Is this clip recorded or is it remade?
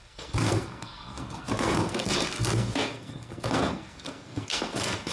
remade